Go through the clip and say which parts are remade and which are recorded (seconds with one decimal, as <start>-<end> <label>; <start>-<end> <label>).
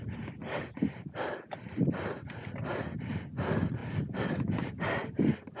0.0-5.6 recorded